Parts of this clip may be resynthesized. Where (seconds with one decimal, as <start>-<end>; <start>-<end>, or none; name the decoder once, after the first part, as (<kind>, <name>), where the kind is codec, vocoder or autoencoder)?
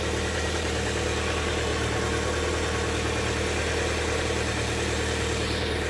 0.0-1.7 (vocoder, BigVGAN v2); 4.2-5.9